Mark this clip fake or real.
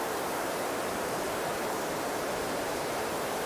fake